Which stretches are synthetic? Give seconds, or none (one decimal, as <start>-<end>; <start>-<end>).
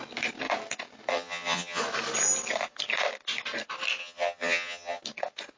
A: 1.1-1.8; 4.0-5.0